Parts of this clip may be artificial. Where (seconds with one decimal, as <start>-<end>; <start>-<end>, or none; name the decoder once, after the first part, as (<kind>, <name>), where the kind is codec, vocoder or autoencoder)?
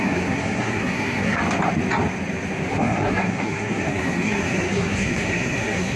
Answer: 0.0-1.4 (codec, SNAC); 2.7-6.0